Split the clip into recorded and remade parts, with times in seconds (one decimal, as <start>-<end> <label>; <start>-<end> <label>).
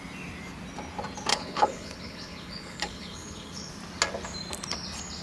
0.0-1.3 recorded; 1.3-3.7 remade; 3.7-5.2 recorded